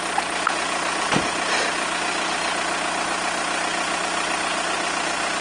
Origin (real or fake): real